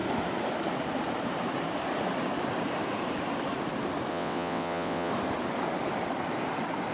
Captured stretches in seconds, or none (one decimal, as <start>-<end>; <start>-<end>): 0.0-4.1; 5.1-6.9